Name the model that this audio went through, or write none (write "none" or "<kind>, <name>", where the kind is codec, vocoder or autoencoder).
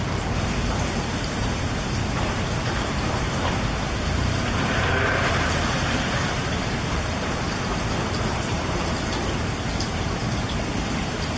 vocoder, BigVGAN v2